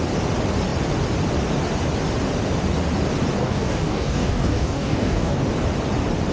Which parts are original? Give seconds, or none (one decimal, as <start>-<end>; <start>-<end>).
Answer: 0.0-3.4; 5.4-6.3